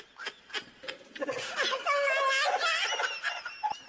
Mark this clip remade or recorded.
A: recorded